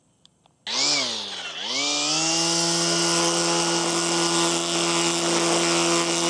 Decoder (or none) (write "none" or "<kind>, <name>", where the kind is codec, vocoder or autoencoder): none